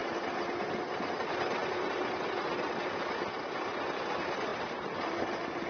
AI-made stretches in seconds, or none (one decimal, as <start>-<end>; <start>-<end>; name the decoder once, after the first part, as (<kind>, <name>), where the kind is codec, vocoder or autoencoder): 1.6-2.8 (vocoder, BigVGAN v2); 4.5-5.3